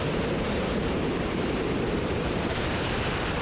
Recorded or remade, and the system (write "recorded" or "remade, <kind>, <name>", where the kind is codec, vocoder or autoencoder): remade, vocoder, BigVGAN v2